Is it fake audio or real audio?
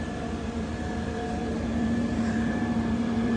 fake